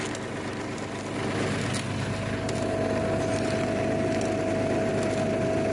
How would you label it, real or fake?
real